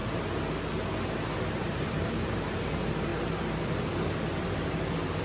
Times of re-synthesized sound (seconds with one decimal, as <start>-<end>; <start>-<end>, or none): 1.5-3.1; 4.2-5.2